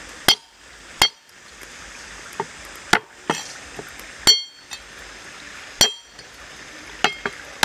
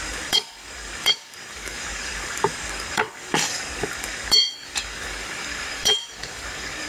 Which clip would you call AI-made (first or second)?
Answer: second